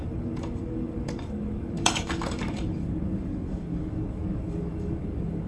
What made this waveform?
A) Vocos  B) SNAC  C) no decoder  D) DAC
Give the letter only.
D